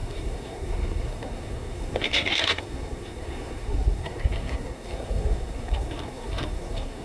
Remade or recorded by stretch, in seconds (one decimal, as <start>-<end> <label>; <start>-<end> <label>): 0.0-7.0 remade